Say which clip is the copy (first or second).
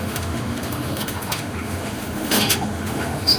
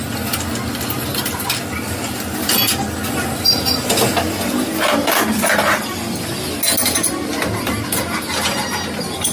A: first